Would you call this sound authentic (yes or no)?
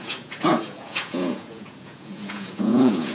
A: no